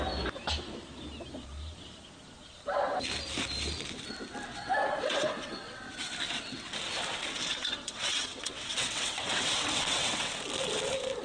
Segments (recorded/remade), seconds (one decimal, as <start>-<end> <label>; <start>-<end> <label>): 0.0-4.5 recorded; 4.5-6.1 remade; 6.1-7.5 recorded; 7.5-10.3 remade; 10.3-11.2 recorded